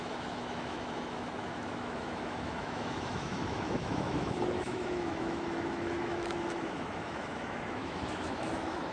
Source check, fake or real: fake